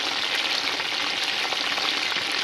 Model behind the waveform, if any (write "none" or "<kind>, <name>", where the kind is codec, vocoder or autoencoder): none